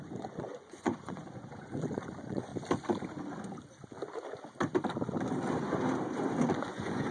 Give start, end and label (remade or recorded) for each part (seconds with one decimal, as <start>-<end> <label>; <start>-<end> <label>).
0.0-2.5 remade; 2.5-6.5 recorded; 6.5-7.1 remade